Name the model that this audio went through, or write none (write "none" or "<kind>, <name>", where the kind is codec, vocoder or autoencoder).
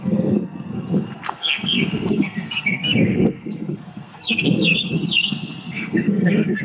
codec, SNAC